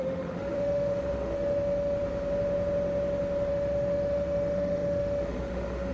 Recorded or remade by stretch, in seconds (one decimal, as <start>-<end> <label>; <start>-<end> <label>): 0.0-2.0 remade; 2.0-3.5 recorded; 3.5-5.9 remade